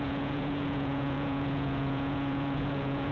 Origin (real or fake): fake